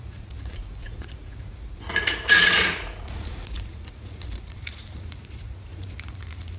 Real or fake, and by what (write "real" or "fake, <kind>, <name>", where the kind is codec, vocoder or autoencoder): fake, vocoder, Vocos